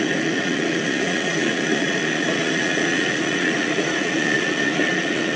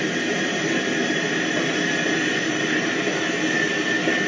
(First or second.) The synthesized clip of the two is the first